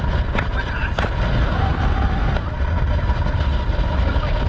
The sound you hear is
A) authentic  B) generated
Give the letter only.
A